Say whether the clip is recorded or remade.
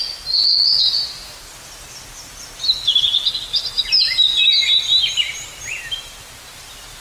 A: recorded